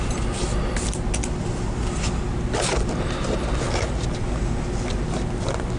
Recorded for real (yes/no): yes